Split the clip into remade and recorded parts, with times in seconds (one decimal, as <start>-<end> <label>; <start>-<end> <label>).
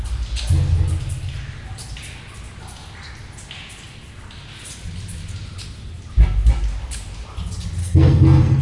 0.0-7.8 recorded; 7.8-8.6 remade